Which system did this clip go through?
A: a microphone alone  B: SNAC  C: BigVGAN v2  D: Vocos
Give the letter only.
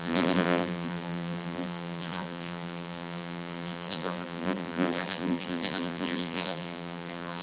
C